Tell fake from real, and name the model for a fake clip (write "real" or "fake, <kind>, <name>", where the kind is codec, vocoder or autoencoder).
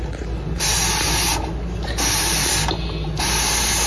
real